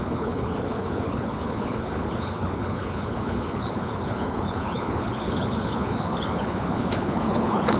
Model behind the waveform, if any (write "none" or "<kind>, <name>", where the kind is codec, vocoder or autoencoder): codec, HILCodec